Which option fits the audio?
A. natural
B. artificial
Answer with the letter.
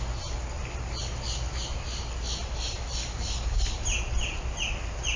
A